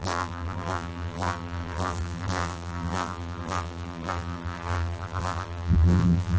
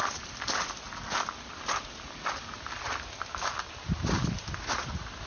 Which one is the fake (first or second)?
first